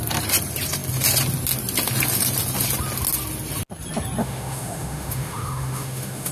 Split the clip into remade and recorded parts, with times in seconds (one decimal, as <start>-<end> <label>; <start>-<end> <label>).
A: 0.0-4.2 recorded; 4.2-6.3 remade